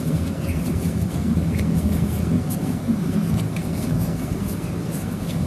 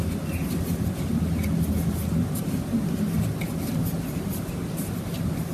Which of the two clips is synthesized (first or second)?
first